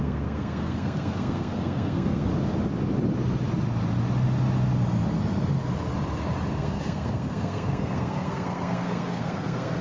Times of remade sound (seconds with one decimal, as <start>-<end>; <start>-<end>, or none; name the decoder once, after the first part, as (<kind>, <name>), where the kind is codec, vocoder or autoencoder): 0.0-2.3 (codec, SNAC); 6.6-9.8